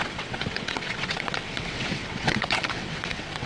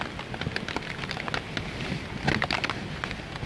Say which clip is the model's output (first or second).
first